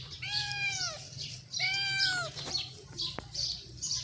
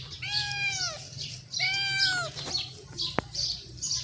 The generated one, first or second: first